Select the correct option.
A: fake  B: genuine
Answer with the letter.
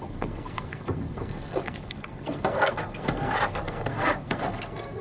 A